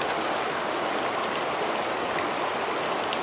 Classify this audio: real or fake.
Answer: real